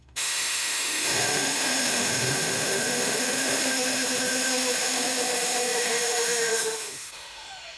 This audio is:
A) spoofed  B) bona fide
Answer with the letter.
A